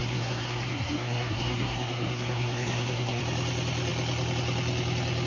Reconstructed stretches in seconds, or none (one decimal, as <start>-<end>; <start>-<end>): 0.0-3.2